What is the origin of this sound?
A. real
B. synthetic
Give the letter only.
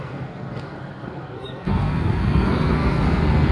B